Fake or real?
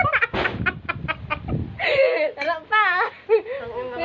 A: real